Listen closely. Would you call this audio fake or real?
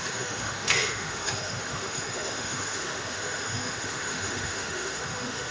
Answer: fake